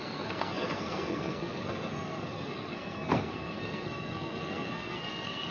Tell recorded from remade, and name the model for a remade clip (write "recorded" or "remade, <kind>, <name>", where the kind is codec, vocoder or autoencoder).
remade, codec, SNAC